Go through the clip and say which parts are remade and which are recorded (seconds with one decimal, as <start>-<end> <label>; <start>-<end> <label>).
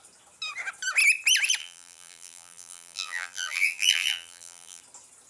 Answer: 0.0-1.6 recorded; 1.6-4.8 remade; 4.8-5.3 recorded